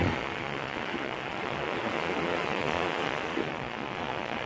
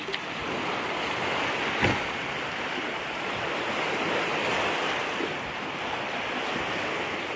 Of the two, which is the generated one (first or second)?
first